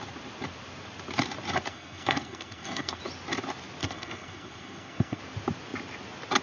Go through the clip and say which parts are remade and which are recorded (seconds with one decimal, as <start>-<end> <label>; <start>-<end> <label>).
0.0-1.7 recorded; 1.7-3.0 remade; 3.0-3.8 recorded; 3.8-5.2 remade; 5.2-6.4 recorded